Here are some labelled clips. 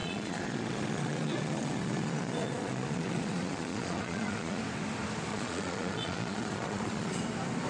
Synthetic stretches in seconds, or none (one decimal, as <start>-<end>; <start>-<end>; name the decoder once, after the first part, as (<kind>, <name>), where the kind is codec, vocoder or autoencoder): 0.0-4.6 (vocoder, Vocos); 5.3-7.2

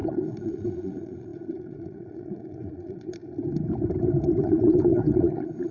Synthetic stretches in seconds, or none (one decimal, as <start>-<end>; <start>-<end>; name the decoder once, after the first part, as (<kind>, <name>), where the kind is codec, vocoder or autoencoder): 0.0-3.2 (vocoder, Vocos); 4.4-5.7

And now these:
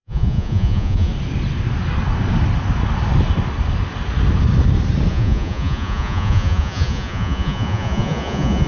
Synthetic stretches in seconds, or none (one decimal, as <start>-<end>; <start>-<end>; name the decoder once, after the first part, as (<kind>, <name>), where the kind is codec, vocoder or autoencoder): 0.0-1.1 (vocoder, Vocos); 5.1-8.7

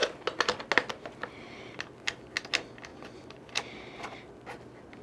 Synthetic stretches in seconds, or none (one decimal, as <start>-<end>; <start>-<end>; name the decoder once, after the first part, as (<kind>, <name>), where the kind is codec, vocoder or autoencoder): 2.9-3.5 (vocoder, Vocos)

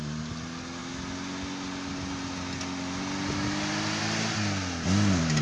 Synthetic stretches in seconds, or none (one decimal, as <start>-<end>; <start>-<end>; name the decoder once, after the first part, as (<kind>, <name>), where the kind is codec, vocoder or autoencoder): none

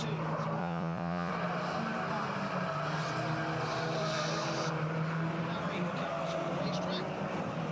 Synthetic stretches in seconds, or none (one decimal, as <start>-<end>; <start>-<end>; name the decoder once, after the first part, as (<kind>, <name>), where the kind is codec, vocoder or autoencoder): 0.6-1.3 (vocoder, Vocos)

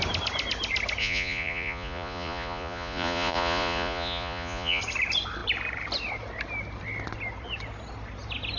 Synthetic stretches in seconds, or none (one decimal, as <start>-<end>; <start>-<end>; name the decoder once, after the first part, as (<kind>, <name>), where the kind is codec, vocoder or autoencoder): 1.0-4.8 (vocoder, Vocos)

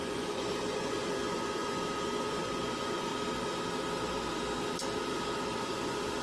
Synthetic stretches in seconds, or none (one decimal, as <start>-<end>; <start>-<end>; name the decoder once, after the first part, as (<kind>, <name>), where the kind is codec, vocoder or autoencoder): 0.0-3.1 (vocoder, Vocos); 5.6-6.2